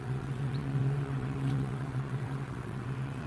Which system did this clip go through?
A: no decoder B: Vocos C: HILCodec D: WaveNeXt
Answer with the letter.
D